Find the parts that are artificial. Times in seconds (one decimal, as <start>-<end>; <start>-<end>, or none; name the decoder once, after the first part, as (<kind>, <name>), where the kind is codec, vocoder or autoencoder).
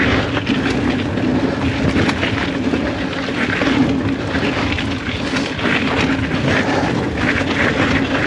none